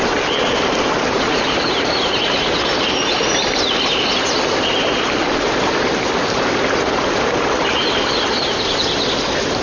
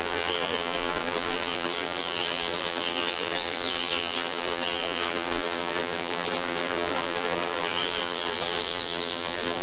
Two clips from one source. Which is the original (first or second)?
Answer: first